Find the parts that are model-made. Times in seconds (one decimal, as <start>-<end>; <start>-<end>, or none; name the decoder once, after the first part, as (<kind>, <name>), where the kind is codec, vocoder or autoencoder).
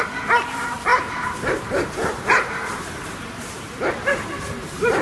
0.9-3.9 (vocoder, BigVGAN v2)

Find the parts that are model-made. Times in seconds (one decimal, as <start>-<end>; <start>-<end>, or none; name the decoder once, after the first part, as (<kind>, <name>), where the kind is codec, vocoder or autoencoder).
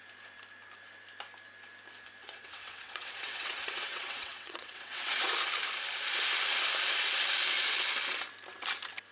2.2-5.3 (vocoder, WaveNeXt)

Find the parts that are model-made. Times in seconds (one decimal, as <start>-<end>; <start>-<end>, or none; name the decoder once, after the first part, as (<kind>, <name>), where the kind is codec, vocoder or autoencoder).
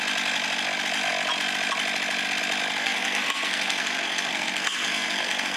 2.8-5.6 (codec, SNAC)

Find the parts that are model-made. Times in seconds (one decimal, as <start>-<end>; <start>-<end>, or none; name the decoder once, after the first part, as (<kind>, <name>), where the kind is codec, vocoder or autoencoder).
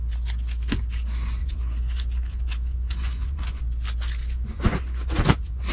1.4-3.6 (vocoder, Vocos); 4.2-5.7